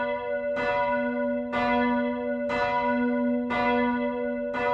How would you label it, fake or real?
real